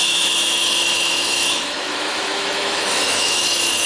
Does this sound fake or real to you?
fake